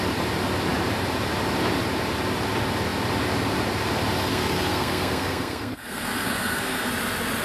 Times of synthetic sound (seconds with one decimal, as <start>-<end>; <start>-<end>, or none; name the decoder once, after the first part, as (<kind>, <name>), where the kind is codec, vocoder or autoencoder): 4.3-6.9 (codec, SNAC)